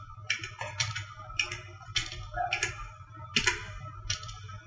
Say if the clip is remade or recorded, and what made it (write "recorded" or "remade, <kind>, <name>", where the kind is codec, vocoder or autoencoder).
recorded